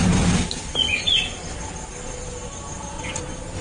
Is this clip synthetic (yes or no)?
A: no